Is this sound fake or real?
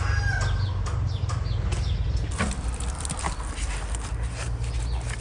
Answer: real